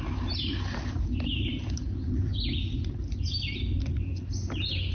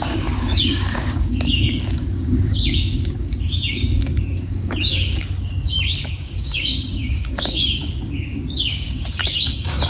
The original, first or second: first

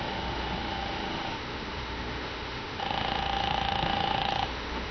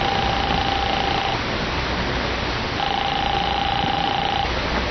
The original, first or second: second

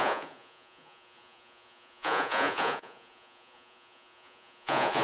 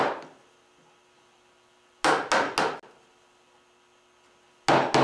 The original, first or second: second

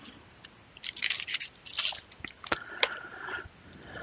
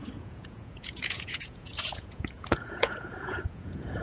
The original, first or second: first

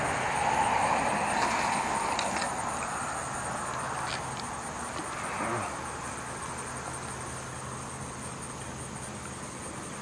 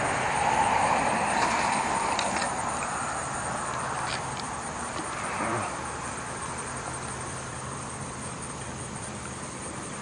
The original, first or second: first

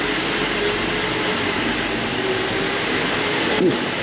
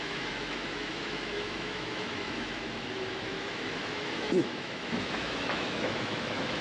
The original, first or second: first